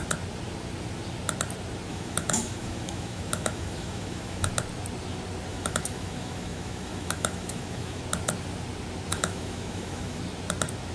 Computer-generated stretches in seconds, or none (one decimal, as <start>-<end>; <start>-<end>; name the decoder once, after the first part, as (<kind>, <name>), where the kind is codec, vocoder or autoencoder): 1.9-4.5 (autoencoder, DAC-VAE); 5.5-8.0; 9.1-10.2